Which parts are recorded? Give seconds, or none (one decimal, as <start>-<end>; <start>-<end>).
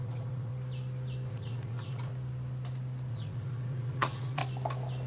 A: 0.5-1.3; 2.1-3.1; 4.4-5.1